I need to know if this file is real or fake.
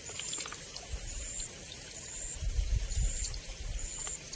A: fake